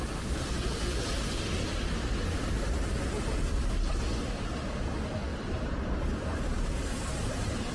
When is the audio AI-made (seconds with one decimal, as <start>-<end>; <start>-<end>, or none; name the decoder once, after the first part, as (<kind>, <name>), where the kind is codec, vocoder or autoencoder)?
1.7-3.1 (vocoder, BigVGAN v2); 5.3-7.7